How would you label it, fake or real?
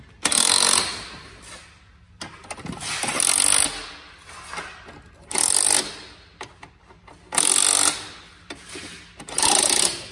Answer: real